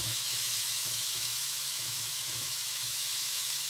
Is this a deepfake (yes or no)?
yes